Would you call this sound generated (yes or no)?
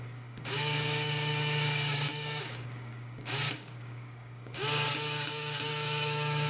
yes